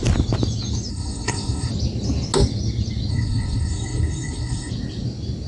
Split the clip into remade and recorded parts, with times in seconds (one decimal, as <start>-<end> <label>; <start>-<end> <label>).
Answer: 0.0-0.9 recorded; 0.9-1.7 remade; 1.7-3.1 recorded; 3.1-4.7 remade; 4.7-5.5 recorded